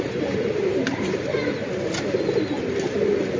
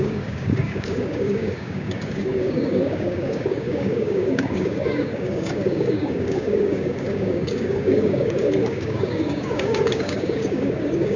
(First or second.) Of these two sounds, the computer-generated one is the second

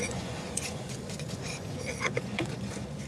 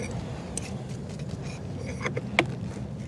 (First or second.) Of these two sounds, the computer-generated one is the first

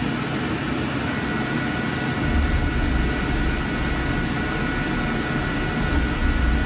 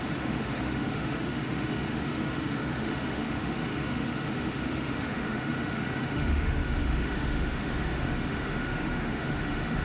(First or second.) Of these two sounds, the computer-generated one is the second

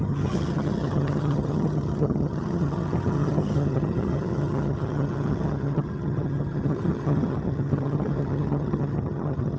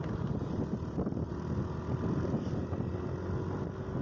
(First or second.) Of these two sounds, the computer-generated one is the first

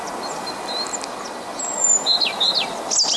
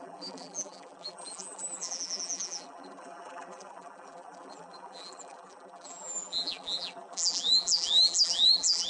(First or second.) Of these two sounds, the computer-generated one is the second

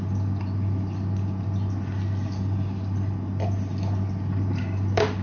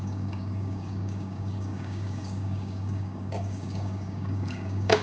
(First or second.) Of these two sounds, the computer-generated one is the second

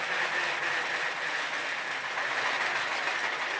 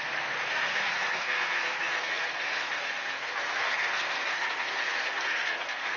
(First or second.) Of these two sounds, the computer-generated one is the second